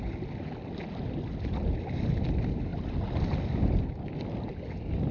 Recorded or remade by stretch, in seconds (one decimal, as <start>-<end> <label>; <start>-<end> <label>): 0.0-5.1 recorded